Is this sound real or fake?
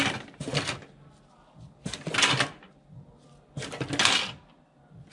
real